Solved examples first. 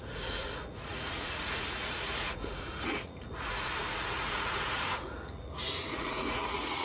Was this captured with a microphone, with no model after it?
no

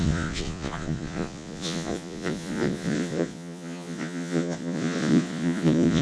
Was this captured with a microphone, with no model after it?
no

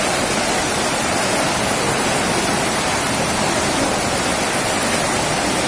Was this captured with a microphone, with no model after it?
yes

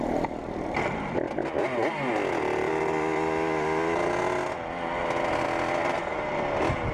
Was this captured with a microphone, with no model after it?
yes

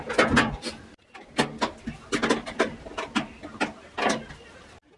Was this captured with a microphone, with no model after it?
yes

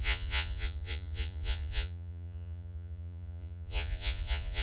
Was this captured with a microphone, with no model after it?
no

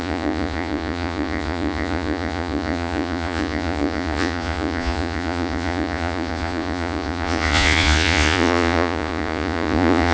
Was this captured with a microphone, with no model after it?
no